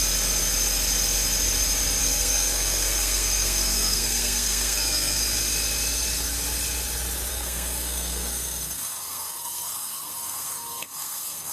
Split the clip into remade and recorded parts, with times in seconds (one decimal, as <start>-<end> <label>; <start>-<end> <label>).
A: 0.0-2.0 recorded; 2.0-5.2 remade; 5.2-7.3 recorded; 7.3-11.5 remade